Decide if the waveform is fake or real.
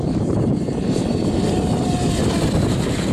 fake